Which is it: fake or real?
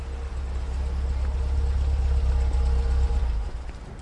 real